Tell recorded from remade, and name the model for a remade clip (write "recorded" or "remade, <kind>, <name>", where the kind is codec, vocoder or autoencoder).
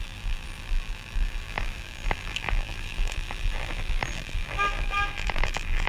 remade, vocoder, BigVGAN v2